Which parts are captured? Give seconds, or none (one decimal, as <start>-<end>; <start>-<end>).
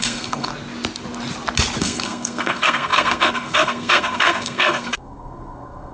0.5-1.8